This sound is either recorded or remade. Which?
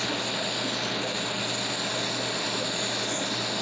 recorded